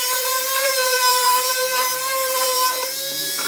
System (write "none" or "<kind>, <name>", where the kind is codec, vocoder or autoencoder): vocoder, BigVGAN v2